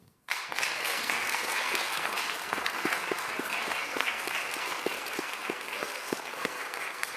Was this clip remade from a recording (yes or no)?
yes